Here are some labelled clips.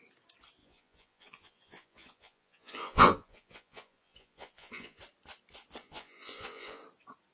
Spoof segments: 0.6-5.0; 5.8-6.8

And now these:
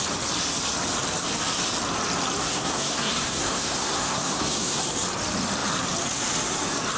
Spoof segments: 2.4-4.8

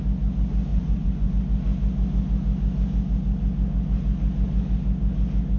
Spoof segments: 0.7-1.3

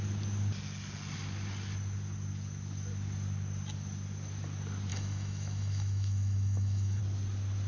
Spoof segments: 4.9-7.0

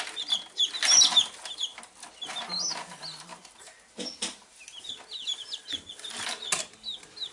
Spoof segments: none

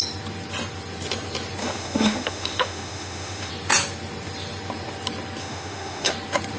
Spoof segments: 1.6-3.5; 5.4-6.1